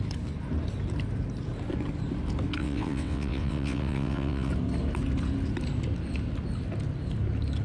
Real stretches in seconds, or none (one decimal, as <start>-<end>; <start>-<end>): 0.0-2.6; 4.5-7.6